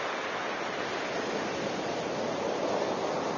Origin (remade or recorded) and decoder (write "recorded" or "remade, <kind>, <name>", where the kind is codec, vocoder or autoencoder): recorded